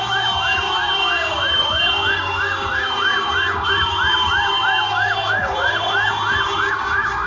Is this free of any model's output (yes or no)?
no